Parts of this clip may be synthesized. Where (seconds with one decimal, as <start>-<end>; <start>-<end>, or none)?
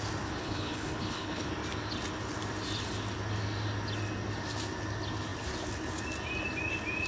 0.4-1.5